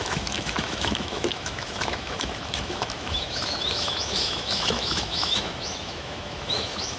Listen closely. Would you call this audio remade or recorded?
remade